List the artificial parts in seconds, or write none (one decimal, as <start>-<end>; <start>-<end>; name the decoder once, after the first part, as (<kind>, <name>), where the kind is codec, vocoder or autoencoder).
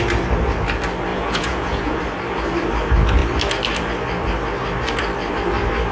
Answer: 1.1-2.0 (vocoder, Vocos)